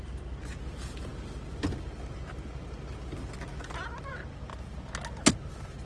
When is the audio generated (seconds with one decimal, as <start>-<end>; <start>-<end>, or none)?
none